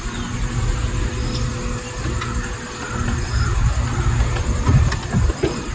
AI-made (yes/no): no